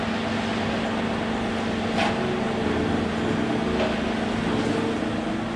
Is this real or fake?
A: real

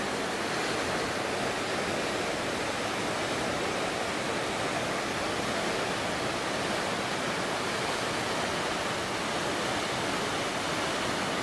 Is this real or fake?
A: real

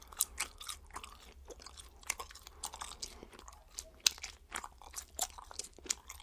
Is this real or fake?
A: real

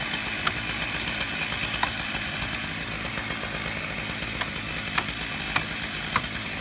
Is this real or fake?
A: real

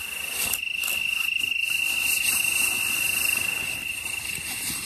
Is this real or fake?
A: real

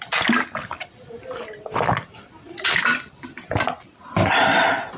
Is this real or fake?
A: real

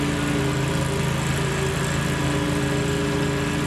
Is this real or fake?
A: real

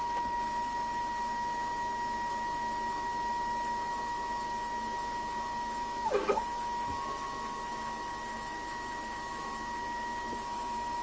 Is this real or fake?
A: fake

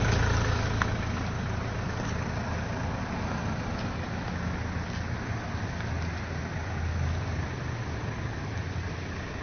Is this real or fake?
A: real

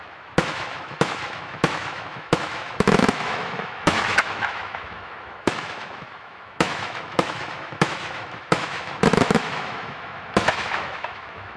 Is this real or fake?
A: fake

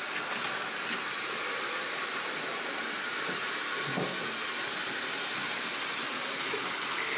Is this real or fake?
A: real